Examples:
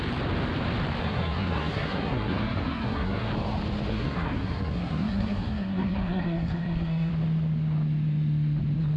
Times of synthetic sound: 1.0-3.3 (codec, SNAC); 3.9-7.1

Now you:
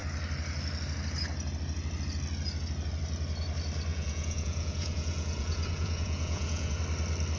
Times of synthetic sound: 3.9-6.8 (vocoder, Vocos)

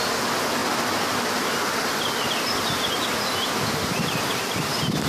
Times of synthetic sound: 0.0-0.6 (vocoder, BigVGAN v2); 3.7-5.1

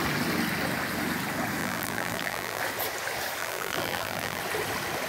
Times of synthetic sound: 1.6-2.6 (vocoder, BigVGAN v2); 3.4-4.4

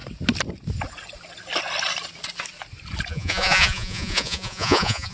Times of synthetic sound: 3.1-5.1 (vocoder, Vocos)

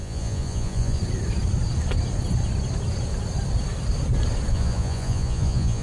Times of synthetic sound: 0.0-1.0 (vocoder, Vocos); 4.5-5.8

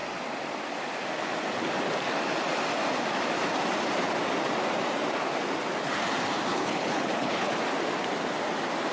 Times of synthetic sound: 6.5-7.5 (codec, HILCodec)

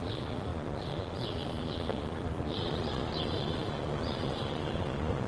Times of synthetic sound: 0.0-5.3 (vocoder, Vocos)